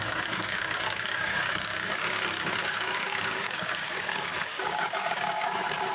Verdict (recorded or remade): remade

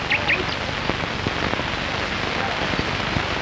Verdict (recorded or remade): recorded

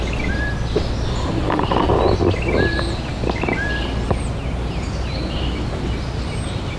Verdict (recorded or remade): recorded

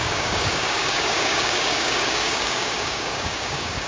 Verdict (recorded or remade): remade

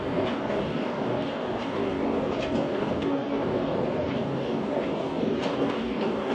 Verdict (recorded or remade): remade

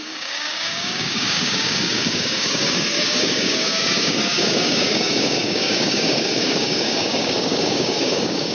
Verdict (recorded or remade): remade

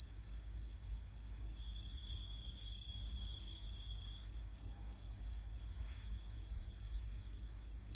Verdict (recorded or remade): remade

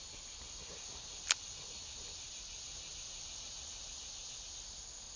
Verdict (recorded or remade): recorded